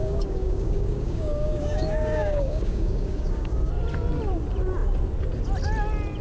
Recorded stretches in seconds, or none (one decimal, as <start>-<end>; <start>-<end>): 3.7-6.2

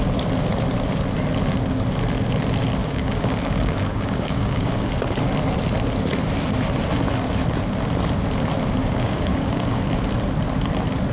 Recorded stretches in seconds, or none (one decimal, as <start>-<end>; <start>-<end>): 0.0-2.8; 4.9-8.8; 9.8-11.1

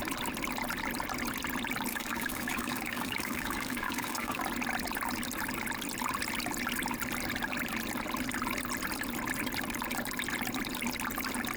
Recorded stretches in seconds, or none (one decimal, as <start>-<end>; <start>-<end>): 0.0-1.9; 4.4-11.6

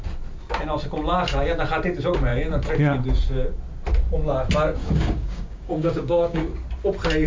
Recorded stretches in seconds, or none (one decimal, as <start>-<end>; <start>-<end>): 0.0-4.8; 6.4-7.3

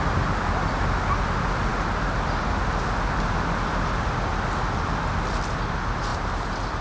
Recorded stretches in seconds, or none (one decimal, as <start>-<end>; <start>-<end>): 0.0-6.8

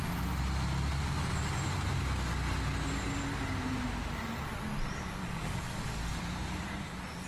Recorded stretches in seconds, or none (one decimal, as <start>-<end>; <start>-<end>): 0.0-5.2; 6.2-7.3

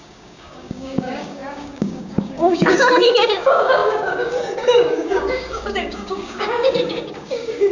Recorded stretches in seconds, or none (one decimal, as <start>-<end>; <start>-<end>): none

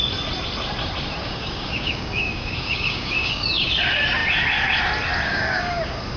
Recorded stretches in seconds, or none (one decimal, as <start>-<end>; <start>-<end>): 0.0-1.2; 3.7-5.3; 5.8-6.2